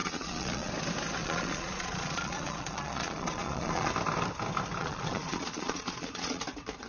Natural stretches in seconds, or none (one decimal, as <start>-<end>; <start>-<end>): 0.7-1.2; 3.9-4.8; 6.4-6.9